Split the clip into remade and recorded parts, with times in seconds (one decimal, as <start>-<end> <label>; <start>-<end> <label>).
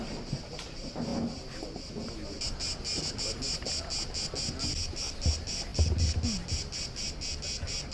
0.0-7.9 recorded